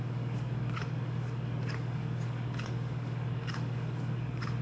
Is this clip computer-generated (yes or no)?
yes